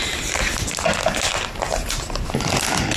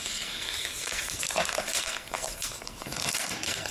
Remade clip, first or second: second